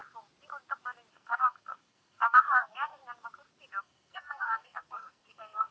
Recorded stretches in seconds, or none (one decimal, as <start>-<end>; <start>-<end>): 0.0-1.1; 3.0-3.8